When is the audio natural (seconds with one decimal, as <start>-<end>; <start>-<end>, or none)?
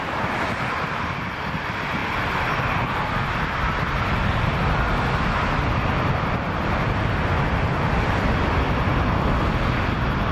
0.0-10.3